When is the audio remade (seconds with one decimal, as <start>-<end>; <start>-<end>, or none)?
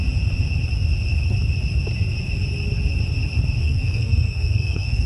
3.6-5.1